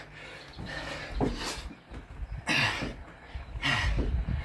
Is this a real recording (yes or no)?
yes